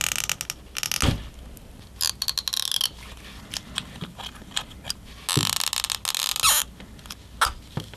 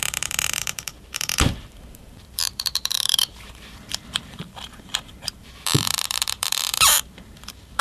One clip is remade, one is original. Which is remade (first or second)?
second